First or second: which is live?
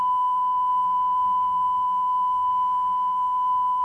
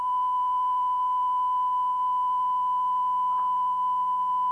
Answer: second